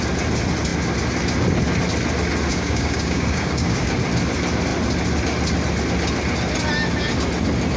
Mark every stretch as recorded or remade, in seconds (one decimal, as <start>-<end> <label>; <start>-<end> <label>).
0.0-2.5 recorded; 2.5-3.9 remade; 3.9-7.8 recorded